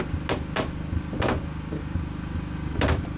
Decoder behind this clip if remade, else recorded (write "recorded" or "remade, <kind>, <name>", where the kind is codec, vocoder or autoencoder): recorded